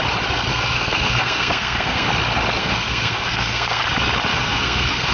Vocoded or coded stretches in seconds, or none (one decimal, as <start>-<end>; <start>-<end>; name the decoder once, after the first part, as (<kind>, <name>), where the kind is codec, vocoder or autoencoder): 0.5-2.1 (codec, SNAC); 2.6-3.8; 4.3-5.1